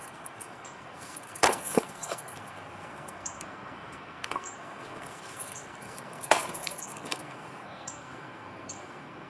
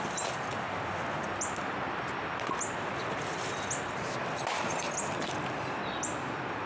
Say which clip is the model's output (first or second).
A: first